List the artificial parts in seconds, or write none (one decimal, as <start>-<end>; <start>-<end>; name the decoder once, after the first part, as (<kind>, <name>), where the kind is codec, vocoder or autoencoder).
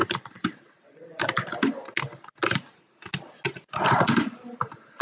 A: 0.0-0.8 (vocoder, BigVGAN v2)